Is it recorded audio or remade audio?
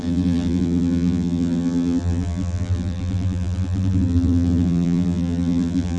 remade